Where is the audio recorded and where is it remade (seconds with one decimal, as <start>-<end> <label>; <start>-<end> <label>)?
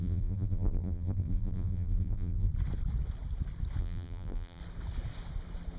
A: 0.0-2.5 remade; 2.5-3.8 recorded; 3.8-4.6 remade; 4.6-5.8 recorded